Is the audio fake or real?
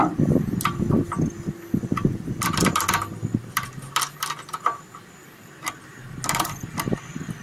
real